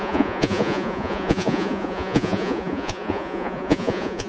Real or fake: fake